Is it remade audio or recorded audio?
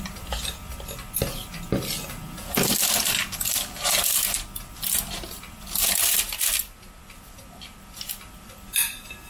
recorded